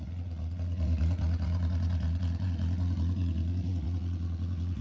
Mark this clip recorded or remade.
remade